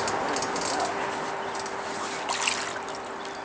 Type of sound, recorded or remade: recorded